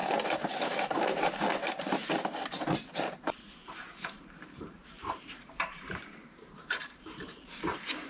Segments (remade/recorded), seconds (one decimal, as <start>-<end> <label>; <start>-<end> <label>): 0.0-3.6 recorded; 3.6-8.1 remade